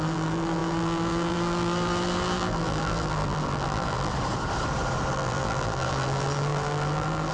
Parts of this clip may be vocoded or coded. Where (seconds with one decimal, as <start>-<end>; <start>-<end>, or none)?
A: 0.0-4.1; 5.1-7.3